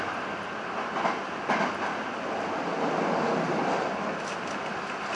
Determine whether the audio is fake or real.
real